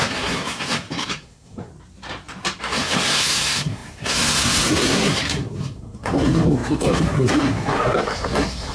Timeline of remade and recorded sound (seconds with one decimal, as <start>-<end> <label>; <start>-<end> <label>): 0.0-1.7 remade; 1.7-2.6 recorded; 2.6-8.7 remade